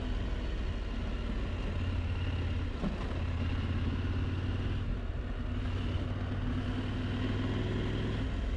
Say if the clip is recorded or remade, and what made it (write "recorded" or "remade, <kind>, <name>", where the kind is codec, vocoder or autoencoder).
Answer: recorded